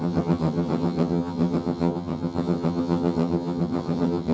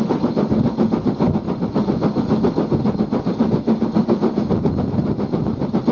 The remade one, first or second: first